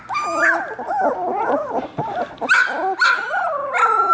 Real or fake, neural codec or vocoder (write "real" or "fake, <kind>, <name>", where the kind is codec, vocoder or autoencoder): real